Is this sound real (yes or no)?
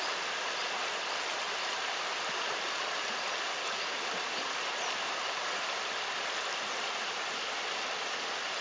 yes